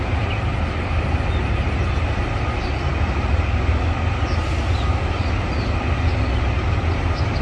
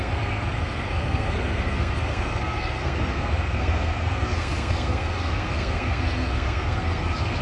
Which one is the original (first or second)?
first